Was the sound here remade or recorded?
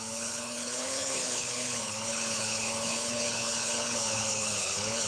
remade